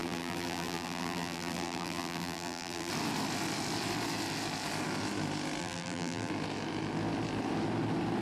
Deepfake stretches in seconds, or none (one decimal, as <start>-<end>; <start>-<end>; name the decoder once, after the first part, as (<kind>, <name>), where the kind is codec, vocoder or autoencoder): 0.0-2.9 (vocoder, BigVGAN v2); 5.6-6.3